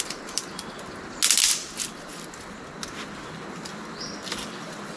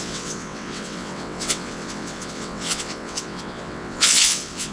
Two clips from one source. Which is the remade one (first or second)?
second